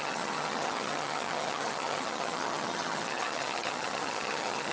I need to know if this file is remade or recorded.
remade